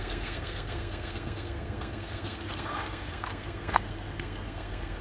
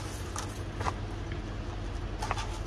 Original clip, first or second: second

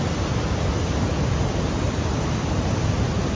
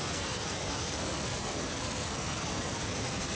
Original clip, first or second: first